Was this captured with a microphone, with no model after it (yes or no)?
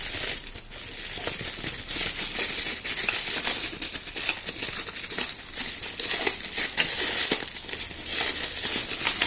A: yes